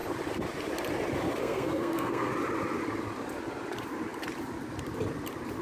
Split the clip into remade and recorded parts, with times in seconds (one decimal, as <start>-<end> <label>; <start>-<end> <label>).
0.0-1.4 recorded; 1.4-2.3 remade; 2.3-5.6 recorded